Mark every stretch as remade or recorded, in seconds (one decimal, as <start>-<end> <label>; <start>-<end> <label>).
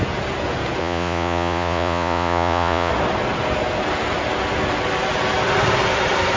0.0-0.8 recorded; 0.8-2.9 remade; 2.9-6.4 recorded